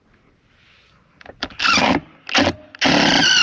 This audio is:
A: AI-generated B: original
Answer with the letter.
B